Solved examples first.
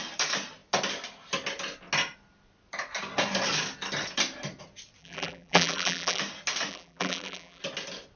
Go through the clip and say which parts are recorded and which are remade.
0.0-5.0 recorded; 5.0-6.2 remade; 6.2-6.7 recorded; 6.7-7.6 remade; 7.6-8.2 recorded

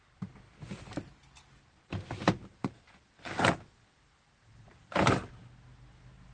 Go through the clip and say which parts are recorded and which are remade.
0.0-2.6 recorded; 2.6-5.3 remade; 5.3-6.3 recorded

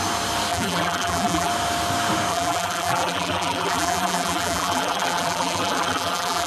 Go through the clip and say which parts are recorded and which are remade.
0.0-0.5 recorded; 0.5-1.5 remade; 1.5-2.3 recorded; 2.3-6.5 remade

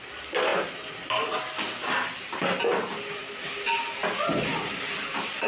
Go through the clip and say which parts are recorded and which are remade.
0.0-0.5 recorded; 0.5-3.8 remade; 3.8-5.5 recorded

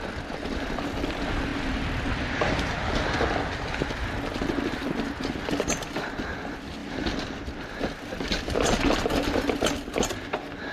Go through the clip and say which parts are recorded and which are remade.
0.0-6.8 recorded; 6.8-8.8 remade; 8.8-10.7 recorded

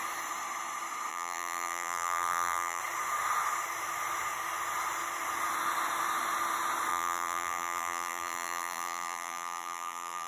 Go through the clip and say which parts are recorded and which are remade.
0.0-1.1 recorded; 1.1-2.8 remade; 2.8-6.9 recorded; 6.9-10.3 remade

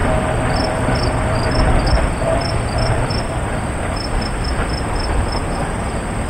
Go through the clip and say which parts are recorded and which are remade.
0.0-3.6 remade; 3.6-6.3 recorded